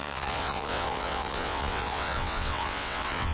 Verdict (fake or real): fake